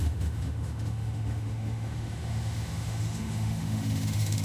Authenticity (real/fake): fake